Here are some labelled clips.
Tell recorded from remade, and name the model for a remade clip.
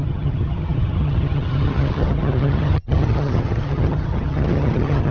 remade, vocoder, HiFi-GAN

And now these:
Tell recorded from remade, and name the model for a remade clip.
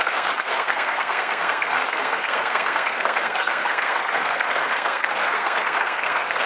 remade, codec, SNAC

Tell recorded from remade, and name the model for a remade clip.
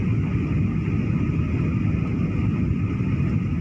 remade, vocoder, BigVGAN v2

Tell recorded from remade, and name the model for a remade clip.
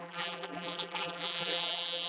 remade, vocoder, BigVGAN v2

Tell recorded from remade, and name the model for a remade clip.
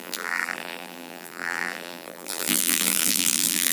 remade, vocoder, BigVGAN v2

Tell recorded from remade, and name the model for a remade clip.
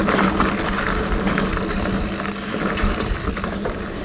recorded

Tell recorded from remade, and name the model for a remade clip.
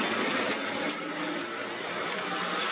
recorded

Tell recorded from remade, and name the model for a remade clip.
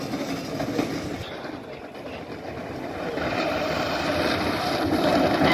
recorded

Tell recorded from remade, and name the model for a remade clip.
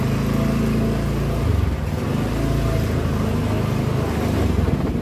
recorded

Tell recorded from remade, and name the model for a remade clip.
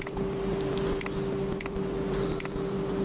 recorded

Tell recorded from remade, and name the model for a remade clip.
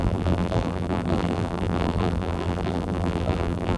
remade, vocoder, BigVGAN v2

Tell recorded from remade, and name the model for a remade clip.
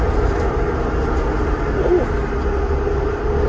recorded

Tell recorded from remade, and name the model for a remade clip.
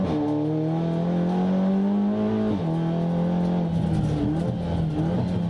recorded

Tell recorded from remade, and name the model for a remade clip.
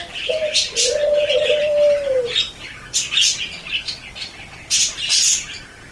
remade, vocoder, BigVGAN v2